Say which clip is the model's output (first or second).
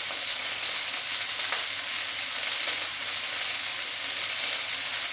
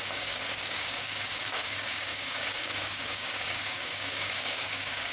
second